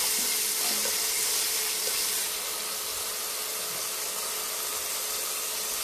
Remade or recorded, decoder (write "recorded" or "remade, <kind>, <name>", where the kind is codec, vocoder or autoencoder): recorded